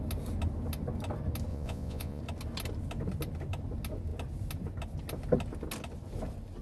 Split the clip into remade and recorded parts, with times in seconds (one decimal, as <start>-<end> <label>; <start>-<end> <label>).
0.0-1.5 recorded; 1.5-2.2 remade; 2.2-6.6 recorded